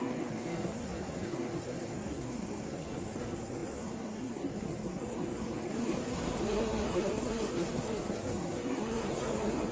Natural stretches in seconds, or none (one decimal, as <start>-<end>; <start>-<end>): none